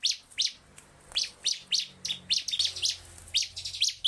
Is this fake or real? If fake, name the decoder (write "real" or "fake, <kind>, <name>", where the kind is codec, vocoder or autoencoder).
real